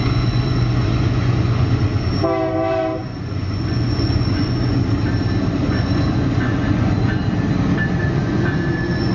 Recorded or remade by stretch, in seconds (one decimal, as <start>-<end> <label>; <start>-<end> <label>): 0.0-2.1 remade; 2.1-3.0 recorded; 3.0-4.8 remade; 4.8-5.6 recorded; 5.6-7.2 remade; 7.2-7.9 recorded; 7.9-9.1 remade